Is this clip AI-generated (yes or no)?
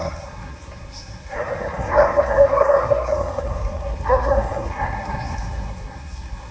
yes